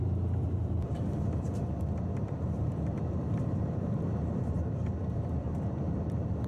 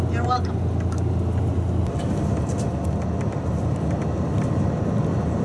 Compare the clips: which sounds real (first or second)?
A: second